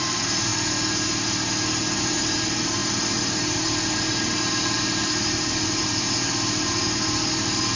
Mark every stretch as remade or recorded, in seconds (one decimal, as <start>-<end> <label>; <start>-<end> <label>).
0.0-0.5 remade; 0.5-2.0 recorded; 2.0-7.8 remade